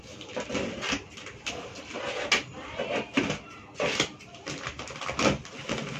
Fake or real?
real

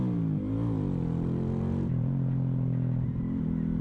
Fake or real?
real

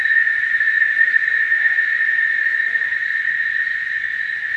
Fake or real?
fake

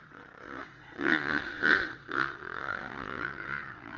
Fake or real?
fake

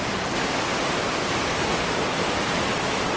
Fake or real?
real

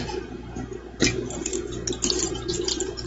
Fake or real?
real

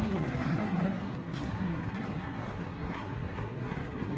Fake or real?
fake